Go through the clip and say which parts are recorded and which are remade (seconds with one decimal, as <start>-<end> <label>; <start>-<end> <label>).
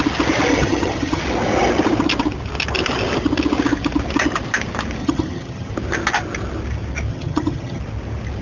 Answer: 0.0-0.5 recorded; 0.5-1.2 remade; 1.2-5.0 recorded; 5.0-5.7 remade; 5.7-7.1 recorded; 7.1-7.8 remade; 7.8-8.4 recorded